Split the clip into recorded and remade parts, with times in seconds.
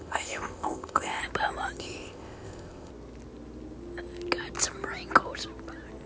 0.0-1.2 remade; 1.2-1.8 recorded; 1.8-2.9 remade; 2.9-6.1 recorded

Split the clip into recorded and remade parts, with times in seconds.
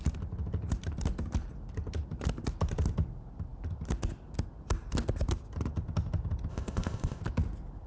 0.0-6.5 recorded; 6.5-7.2 remade; 7.2-7.9 recorded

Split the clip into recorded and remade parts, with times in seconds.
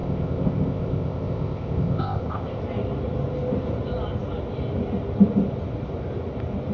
0.0-2.6 remade; 2.6-6.7 recorded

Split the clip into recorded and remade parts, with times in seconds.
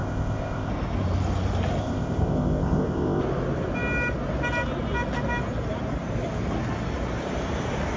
0.0-0.7 remade; 0.7-1.8 recorded; 1.8-3.2 remade; 3.2-8.0 recorded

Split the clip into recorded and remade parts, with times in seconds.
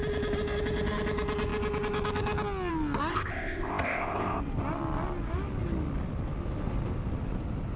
0.0-3.1 recorded; 3.1-4.4 remade; 4.4-7.8 recorded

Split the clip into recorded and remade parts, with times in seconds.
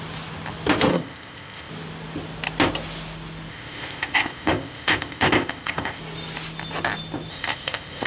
0.0-0.9 recorded; 0.9-1.7 remade; 1.7-3.5 recorded; 3.5-6.0 remade; 6.0-7.3 recorded; 7.3-8.1 remade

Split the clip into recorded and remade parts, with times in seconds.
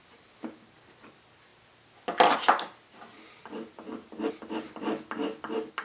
0.0-5.8 recorded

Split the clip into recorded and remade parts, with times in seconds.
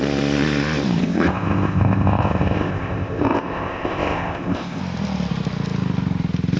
0.0-1.0 recorded; 1.0-4.8 remade; 4.8-6.6 recorded